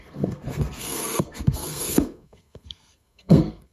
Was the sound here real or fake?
fake